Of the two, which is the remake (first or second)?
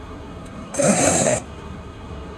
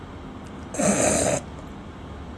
first